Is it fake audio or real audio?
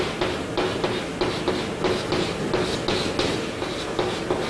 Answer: real